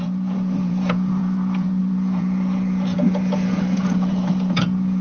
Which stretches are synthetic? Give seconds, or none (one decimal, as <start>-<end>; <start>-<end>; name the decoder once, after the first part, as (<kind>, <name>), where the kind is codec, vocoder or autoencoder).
0.0-5.0 (vocoder, Vocos)